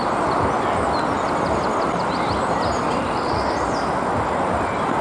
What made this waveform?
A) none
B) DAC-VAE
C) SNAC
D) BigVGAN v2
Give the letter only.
A